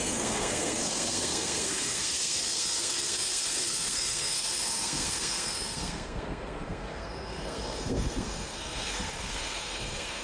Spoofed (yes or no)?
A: yes